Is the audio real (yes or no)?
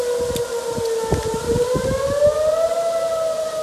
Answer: yes